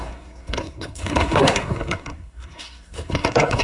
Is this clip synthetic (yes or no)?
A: yes